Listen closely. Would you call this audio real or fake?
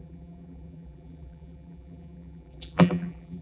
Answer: fake